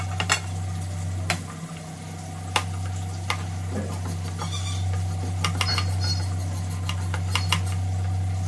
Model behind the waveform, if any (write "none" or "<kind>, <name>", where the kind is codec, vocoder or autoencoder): none